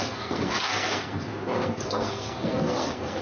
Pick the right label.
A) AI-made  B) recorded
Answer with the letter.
A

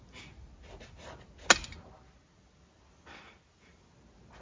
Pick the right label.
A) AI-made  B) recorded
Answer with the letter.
B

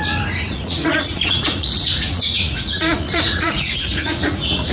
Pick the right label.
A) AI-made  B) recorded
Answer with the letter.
A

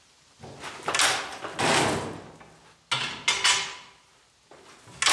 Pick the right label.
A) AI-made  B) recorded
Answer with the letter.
B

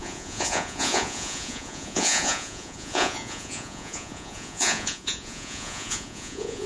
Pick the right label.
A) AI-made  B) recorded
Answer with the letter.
A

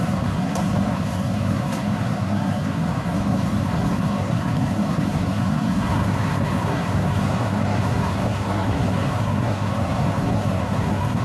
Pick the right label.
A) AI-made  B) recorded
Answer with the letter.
A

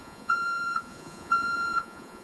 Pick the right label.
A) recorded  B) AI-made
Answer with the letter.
B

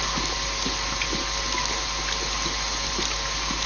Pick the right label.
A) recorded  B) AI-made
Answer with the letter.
A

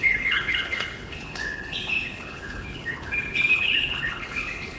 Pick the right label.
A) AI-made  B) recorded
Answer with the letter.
A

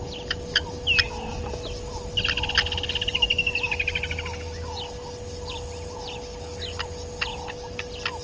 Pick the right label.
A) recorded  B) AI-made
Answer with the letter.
A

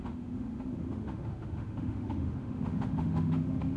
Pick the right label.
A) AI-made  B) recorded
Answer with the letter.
A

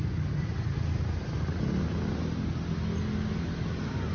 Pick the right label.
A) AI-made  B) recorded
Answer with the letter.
B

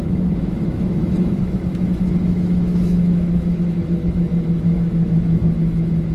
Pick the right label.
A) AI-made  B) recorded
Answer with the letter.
A